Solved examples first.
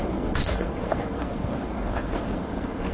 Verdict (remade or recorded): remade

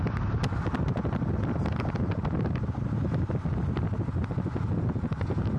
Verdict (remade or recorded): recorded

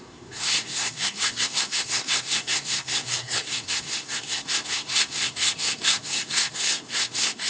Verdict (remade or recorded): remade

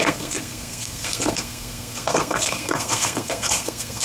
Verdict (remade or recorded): remade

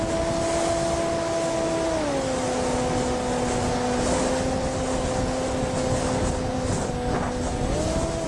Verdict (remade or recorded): recorded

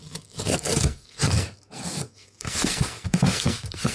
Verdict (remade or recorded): remade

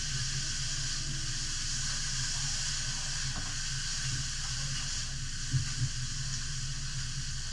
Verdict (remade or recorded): recorded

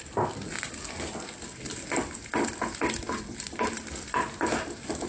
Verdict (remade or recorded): recorded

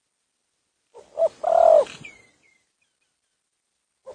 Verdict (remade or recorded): recorded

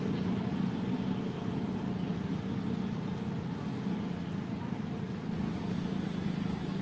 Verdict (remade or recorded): recorded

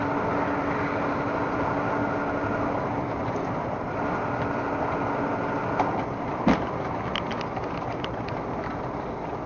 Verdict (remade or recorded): recorded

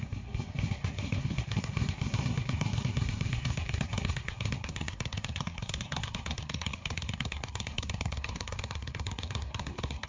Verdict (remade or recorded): remade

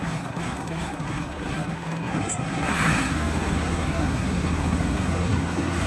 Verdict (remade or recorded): remade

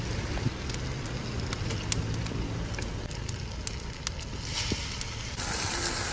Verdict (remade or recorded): recorded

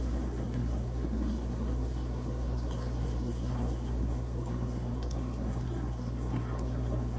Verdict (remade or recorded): remade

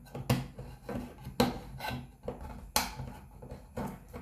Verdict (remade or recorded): recorded